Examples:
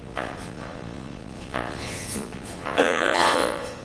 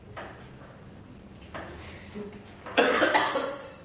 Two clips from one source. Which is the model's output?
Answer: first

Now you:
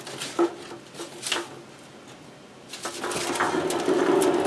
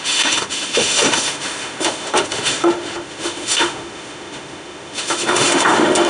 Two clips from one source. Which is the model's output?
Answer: second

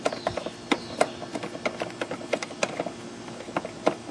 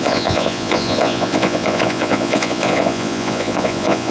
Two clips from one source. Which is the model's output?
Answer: second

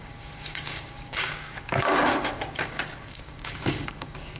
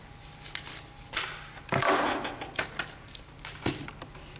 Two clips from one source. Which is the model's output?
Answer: first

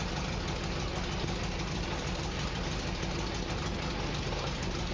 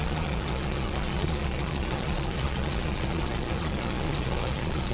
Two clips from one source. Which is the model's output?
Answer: second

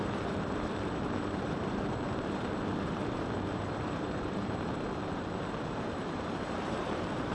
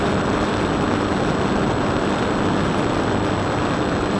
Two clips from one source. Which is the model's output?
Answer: first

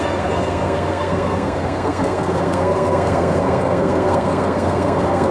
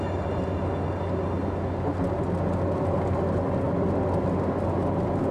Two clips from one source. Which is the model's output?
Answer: first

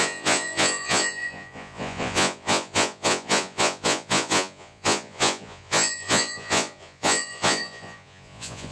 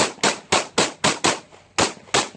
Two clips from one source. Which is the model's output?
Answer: first